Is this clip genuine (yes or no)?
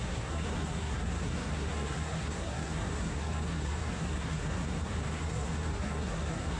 no